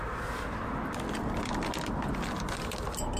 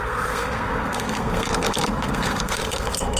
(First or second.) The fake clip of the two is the second